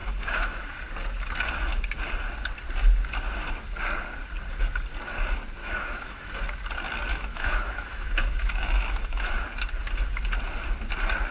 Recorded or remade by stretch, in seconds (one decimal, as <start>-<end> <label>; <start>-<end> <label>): 0.0-0.7 remade; 0.7-5.6 recorded; 5.6-6.3 remade; 6.3-7.1 recorded; 7.1-9.3 remade; 9.3-11.3 recorded